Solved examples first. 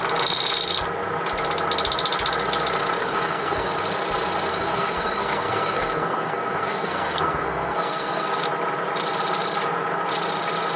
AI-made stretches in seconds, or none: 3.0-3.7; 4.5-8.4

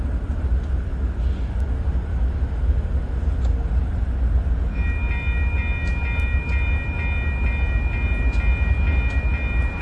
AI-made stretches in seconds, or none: none

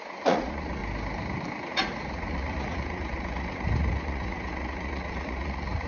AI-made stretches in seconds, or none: 0.0-0.8; 1.7-5.9

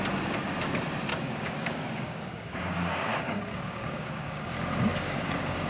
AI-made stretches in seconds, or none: 1.1-4.5; 4.9-5.7

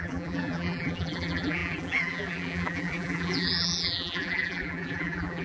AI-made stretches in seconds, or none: 0.0-5.4